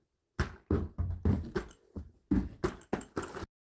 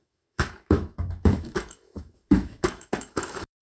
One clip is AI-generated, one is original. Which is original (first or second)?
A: first